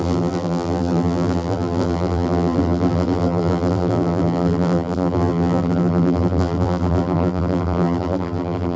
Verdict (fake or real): fake